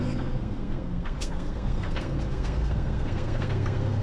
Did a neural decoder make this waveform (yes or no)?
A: yes